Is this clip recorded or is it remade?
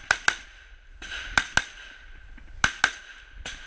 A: recorded